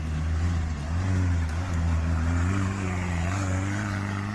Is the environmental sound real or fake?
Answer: real